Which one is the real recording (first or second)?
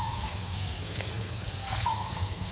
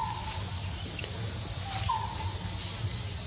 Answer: second